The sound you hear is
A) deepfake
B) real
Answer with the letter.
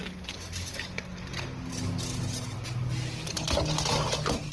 B